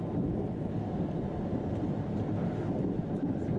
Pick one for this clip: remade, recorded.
recorded